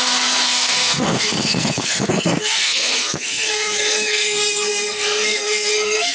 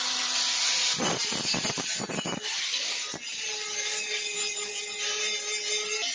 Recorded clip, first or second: second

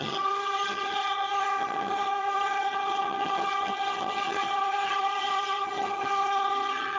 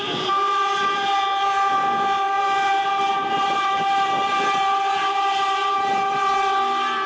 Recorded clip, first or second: second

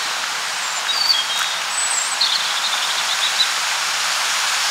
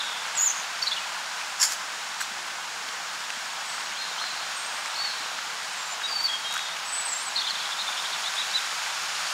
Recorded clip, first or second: first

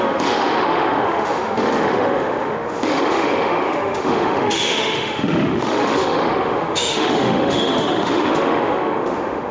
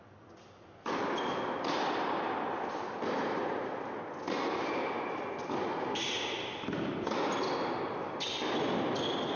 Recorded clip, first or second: second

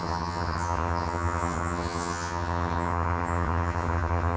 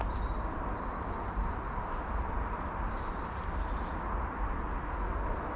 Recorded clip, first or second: second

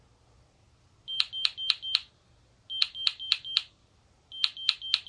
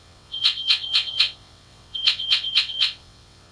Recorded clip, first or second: first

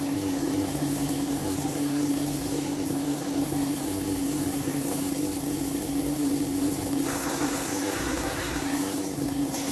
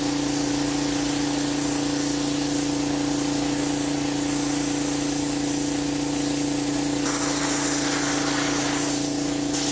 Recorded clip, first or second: second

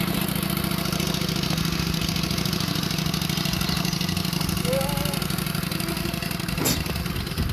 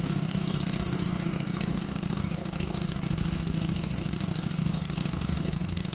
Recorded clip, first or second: first